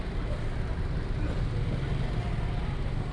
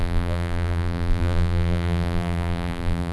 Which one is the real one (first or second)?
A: first